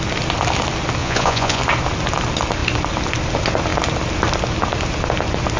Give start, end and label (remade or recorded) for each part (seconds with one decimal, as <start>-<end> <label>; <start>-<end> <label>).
0.0-1.0 recorded; 1.0-1.6 remade; 1.6-5.6 recorded